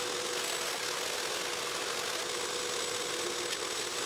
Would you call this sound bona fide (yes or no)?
yes